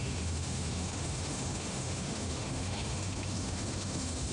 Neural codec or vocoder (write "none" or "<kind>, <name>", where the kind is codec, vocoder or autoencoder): autoencoder, DAC-VAE